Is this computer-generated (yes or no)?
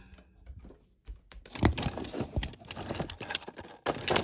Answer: no